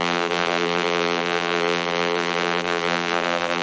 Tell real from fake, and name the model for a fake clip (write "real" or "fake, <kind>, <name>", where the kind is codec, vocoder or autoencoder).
fake, vocoder, BigVGAN v2